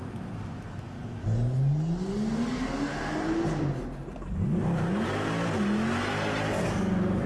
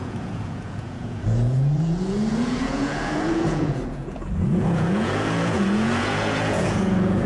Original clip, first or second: first